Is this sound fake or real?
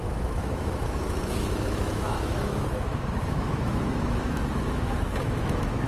fake